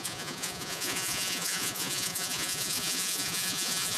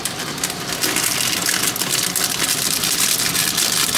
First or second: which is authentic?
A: second